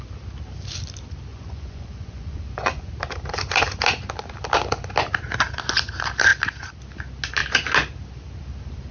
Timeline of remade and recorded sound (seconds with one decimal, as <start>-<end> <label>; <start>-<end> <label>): 0.0-1.3 recorded; 1.3-2.9 remade; 2.9-8.9 recorded